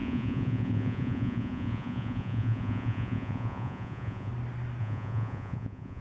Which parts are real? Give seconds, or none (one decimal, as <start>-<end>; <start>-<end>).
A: 4.3-4.8